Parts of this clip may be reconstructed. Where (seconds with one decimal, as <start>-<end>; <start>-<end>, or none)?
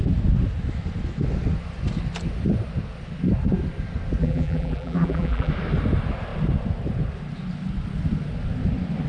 4.2-5.5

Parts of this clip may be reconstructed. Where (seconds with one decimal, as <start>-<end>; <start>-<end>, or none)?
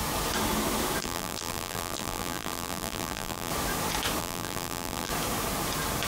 1.0-3.5; 4.2-5.1